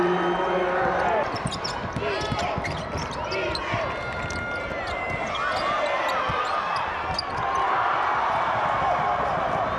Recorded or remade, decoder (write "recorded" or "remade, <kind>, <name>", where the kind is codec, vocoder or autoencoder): recorded